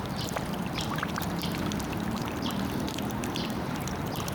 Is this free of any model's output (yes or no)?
no